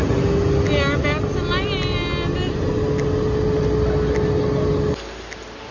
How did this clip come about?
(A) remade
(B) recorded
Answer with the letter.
B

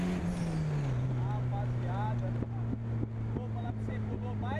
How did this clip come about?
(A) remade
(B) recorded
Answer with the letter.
B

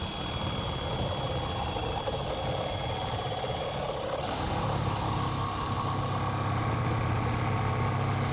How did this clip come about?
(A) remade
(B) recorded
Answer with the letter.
B